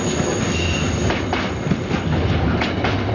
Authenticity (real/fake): real